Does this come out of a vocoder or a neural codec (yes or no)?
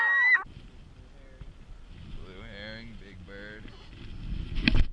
no